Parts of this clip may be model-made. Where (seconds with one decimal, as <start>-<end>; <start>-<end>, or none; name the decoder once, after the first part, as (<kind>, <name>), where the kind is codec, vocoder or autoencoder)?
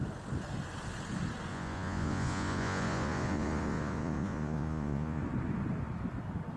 1.5-5.2 (vocoder, Vocos)